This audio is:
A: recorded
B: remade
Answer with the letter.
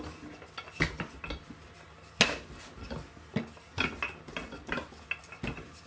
A